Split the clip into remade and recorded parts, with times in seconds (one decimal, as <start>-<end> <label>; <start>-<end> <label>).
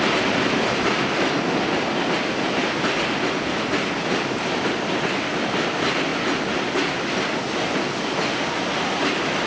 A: 0.0-9.5 recorded